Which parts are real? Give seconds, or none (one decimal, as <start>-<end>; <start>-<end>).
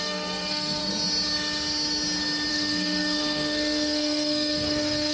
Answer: 0.8-2.5